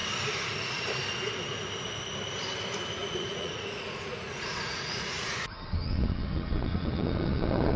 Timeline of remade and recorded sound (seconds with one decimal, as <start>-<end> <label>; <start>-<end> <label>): 0.0-3.0 recorded; 3.0-7.8 remade